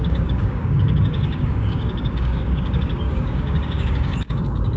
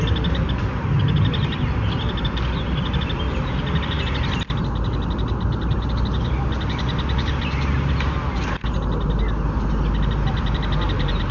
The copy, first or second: first